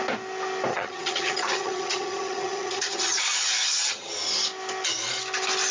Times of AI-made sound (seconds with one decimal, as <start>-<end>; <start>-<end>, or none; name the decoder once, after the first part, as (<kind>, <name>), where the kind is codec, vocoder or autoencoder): 0.7-4.1 (vocoder, HiFi-GAN)